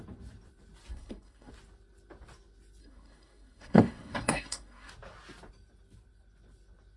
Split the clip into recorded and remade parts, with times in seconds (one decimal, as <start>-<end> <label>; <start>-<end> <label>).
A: 0.0-0.9 recorded; 0.9-1.5 remade; 1.5-2.8 recorded; 2.8-4.9 remade; 4.9-7.0 recorded